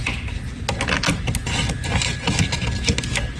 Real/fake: real